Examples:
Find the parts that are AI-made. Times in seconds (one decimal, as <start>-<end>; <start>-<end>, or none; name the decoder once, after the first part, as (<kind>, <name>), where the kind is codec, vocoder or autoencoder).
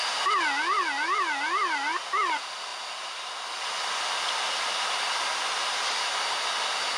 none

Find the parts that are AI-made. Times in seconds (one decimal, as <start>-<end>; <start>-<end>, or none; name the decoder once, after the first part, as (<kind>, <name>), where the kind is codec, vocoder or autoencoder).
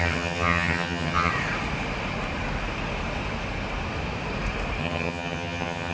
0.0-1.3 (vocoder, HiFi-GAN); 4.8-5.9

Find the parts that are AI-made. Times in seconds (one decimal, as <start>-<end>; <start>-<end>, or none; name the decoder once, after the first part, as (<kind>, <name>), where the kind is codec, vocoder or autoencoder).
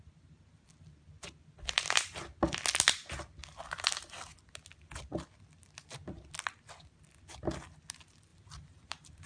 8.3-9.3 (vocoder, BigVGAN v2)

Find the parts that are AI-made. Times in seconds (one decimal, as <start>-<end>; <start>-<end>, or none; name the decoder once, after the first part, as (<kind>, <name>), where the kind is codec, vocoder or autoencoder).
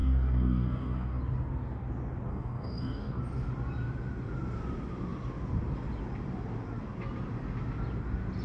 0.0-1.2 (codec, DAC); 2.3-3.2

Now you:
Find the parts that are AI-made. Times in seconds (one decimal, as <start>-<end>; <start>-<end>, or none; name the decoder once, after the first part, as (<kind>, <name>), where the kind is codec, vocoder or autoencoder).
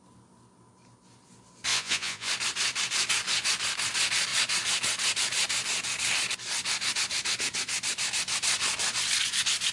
1.7-2.3 (vocoder, Vocos)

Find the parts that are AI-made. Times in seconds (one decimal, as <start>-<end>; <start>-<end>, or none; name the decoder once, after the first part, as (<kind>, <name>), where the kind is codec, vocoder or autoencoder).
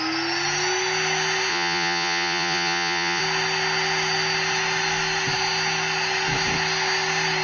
1.5-3.2 (vocoder, Vocos)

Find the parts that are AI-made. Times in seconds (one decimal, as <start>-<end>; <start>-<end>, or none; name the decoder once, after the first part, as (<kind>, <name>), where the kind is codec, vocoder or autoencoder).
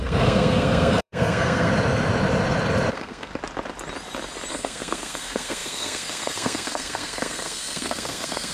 0.0-1.7 (codec, SNAC); 2.9-3.3; 4.5-8.5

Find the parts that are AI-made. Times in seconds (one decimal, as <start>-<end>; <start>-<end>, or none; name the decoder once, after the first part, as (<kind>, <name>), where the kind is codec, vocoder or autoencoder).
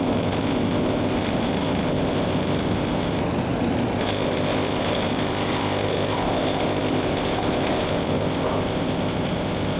0.0-3.2 (codec, ZipCodec); 4.0-9.8